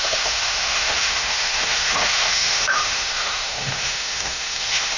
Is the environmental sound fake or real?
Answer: fake